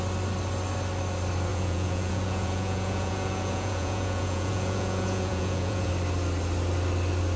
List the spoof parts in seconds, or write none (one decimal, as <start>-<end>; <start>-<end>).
1.5-5.9